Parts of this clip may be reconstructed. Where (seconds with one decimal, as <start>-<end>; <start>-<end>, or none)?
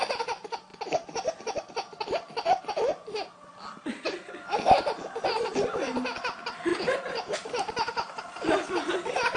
6.7-8.2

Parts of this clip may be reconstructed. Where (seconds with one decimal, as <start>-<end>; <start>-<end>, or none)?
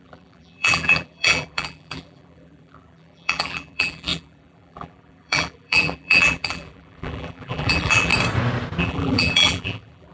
0.0-8.1; 8.8-10.1